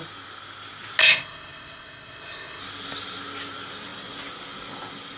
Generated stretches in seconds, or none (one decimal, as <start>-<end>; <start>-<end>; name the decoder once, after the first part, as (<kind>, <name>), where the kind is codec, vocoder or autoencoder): 1.0-2.6 (codec, ZipCodec)